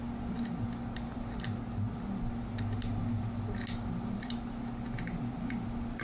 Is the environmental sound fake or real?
real